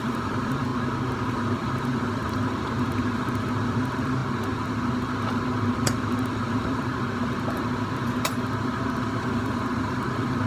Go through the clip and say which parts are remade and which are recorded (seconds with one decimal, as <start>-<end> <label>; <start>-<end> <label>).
0.0-0.7 remade; 0.7-1.3 recorded; 1.3-4.2 remade; 4.2-5.7 recorded; 5.7-6.9 remade; 6.9-9.0 recorded; 9.0-10.5 remade